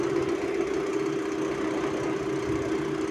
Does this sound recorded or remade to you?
recorded